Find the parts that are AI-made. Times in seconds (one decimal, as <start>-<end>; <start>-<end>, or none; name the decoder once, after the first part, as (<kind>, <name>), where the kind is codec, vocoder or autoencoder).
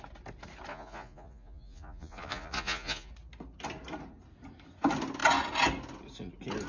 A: 0.7-3.1 (vocoder, Vocos)